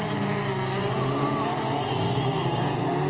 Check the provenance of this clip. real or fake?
real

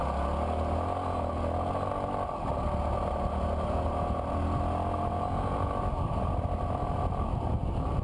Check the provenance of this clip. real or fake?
real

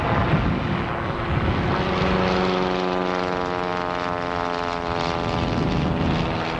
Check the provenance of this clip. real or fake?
real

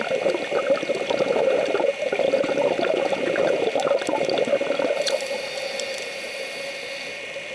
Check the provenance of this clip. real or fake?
real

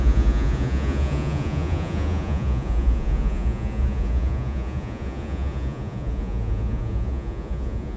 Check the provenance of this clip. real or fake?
fake